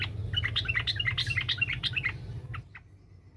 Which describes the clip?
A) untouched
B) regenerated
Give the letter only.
A